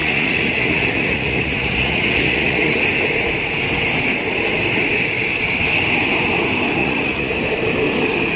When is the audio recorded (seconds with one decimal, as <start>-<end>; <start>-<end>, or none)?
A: 2.8-6.8; 7.3-8.4